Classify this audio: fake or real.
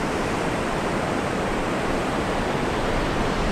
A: fake